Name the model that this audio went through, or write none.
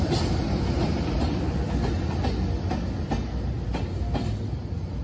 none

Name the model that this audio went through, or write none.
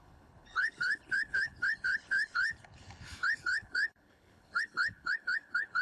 codec, HILCodec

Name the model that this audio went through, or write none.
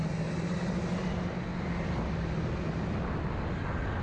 none